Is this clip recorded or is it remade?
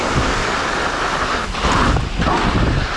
recorded